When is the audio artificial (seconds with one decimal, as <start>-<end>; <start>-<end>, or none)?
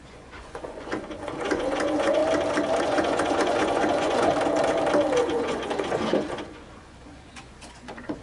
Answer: 0.0-2.2; 2.8-4.3; 5.2-8.2